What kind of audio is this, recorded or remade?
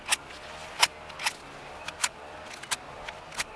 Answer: recorded